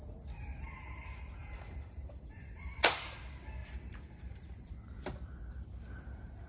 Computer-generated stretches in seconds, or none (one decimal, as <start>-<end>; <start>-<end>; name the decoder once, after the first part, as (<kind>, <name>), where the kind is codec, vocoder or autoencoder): 1.4-3.0 (vocoder, BigVGAN v2); 3.6-4.7